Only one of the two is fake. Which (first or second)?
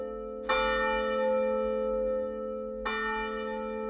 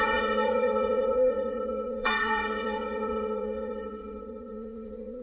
second